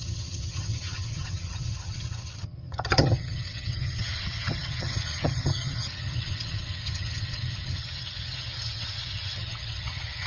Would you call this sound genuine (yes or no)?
no